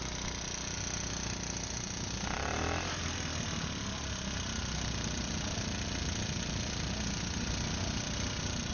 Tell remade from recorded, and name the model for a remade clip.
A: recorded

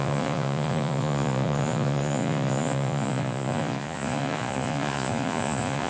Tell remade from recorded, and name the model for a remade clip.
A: remade, vocoder, Vocos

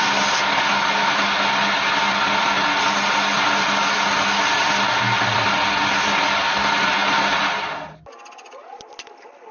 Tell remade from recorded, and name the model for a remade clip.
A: recorded